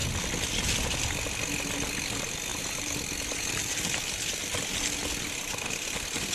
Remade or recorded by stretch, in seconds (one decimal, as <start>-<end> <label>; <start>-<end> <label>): 0.0-2.5 recorded; 2.5-4.1 remade; 4.1-6.3 recorded